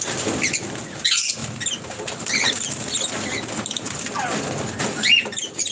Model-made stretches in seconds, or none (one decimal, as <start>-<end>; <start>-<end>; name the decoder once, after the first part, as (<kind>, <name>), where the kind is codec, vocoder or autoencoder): none